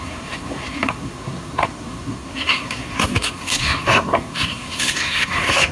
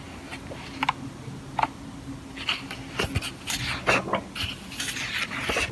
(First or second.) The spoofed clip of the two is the first